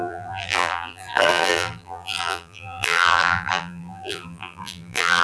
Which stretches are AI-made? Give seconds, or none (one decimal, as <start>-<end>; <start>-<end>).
0.0-5.2